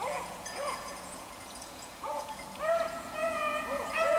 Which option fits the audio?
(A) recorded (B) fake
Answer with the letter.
B